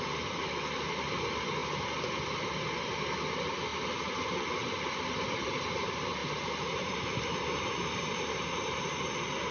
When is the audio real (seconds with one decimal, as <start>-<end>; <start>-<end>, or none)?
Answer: 0.0-6.2; 9.0-9.5